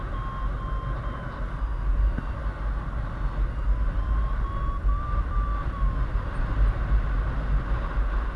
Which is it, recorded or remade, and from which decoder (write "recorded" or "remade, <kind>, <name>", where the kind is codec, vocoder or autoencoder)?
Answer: recorded